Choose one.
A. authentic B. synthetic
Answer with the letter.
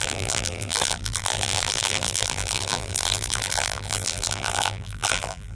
B